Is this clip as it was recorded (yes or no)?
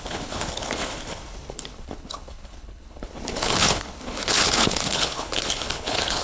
no